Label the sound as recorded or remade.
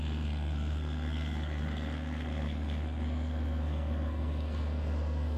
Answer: remade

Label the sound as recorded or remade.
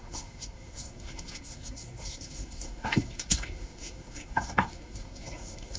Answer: remade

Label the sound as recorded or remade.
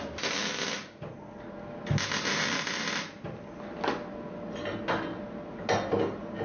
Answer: recorded